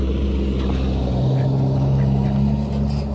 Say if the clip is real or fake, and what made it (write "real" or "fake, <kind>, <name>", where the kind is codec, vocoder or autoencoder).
real